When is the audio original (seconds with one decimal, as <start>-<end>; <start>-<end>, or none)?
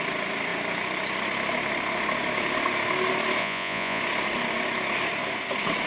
0.0-3.4; 4.0-5.9